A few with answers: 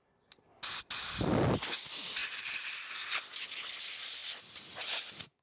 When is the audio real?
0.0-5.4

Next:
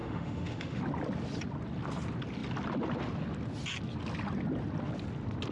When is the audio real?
0.8-5.5

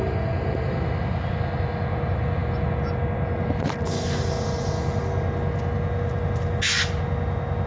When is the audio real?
0.0-7.7

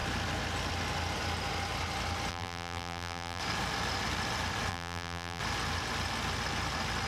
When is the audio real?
0.0-2.3; 3.4-4.7; 5.4-7.1